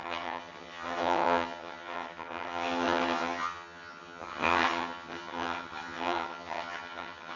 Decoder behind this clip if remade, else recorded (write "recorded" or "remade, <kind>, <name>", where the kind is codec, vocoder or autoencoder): remade, vocoder, HiFi-GAN